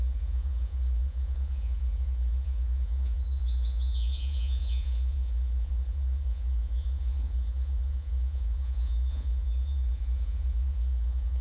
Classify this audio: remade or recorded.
remade